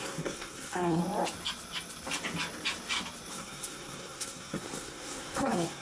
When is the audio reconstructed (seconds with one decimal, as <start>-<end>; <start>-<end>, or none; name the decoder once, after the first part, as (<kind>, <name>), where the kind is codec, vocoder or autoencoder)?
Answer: 0.0-1.0 (codec, SNAC); 3.3-5.8